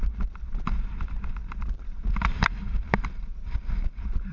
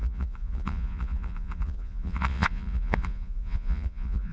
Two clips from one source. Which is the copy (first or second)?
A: second